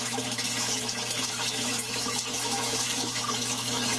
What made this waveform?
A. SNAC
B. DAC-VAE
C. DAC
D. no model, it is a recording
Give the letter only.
B